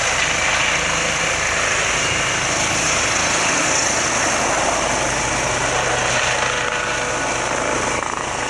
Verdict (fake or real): real